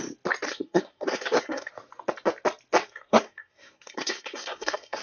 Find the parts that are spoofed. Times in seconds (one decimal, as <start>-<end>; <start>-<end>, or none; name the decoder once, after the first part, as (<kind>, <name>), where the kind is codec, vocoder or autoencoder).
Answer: 0.5-1.7 (codec, SNAC); 2.8-5.0